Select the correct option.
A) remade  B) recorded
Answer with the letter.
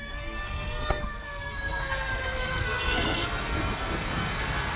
A